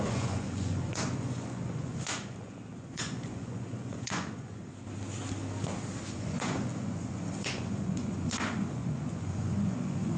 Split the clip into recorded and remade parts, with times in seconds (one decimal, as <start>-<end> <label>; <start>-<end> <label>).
0.0-4.7 remade; 4.7-6.1 recorded; 6.1-10.2 remade